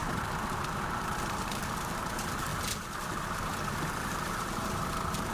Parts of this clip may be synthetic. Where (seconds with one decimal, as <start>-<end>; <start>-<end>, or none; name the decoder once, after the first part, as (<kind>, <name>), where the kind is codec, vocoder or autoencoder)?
0.0-5.3 (vocoder, BigVGAN v2)